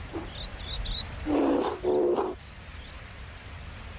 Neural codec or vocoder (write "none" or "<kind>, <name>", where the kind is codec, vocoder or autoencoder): none